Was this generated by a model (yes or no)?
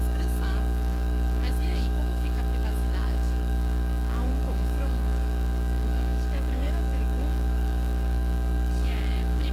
yes